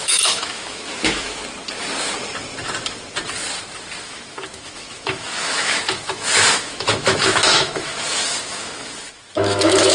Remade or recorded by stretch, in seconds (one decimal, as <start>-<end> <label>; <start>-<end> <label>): 0.0-1.4 remade; 1.4-4.0 recorded; 4.0-9.9 remade